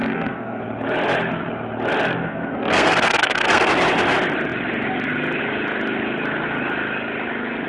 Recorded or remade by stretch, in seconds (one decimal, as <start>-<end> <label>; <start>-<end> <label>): 0.0-0.6 remade; 0.6-2.1 recorded; 2.1-3.7 remade; 3.7-7.7 recorded